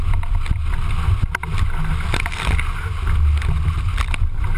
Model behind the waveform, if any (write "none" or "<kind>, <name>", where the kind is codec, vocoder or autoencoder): none